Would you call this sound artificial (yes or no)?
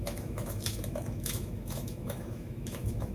yes